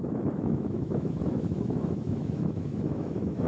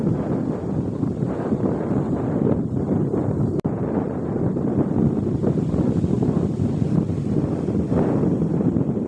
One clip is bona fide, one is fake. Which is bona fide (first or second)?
second